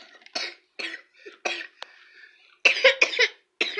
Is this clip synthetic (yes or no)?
no